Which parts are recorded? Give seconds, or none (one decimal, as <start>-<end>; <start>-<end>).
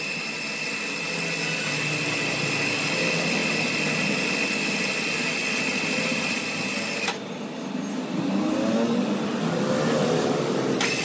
0.0-11.0